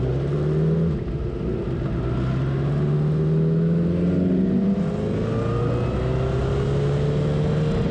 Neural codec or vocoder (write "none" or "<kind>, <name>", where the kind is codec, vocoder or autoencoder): none